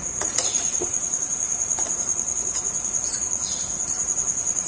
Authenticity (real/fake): fake